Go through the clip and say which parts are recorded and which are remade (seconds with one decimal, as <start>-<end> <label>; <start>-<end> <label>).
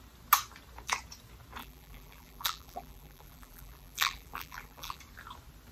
0.0-1.6 recorded; 1.6-5.0 remade; 5.0-5.7 recorded